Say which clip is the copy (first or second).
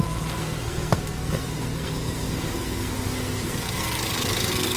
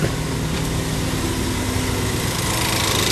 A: first